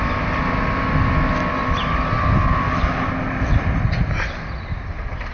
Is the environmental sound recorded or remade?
recorded